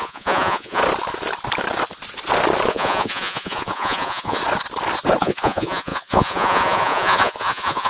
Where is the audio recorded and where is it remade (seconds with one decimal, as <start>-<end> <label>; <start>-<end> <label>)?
0.0-0.8 remade; 0.8-2.7 recorded; 2.7-4.4 remade; 4.4-5.2 recorded; 5.2-7.9 remade